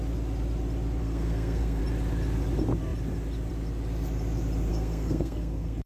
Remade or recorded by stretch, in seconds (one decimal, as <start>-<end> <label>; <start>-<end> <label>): 0.0-1.0 recorded; 1.0-1.8 remade; 1.8-4.7 recorded; 4.7-5.9 remade